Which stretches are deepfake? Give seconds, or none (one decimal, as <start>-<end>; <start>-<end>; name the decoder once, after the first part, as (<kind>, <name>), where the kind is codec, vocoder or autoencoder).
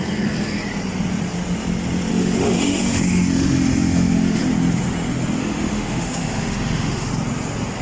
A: 2.1-4.4 (autoencoder, DAC-VAE); 5.4-7.1